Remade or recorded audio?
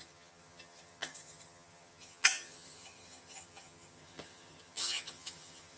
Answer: remade